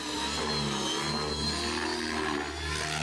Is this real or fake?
real